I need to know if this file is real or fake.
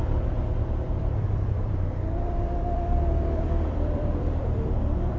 fake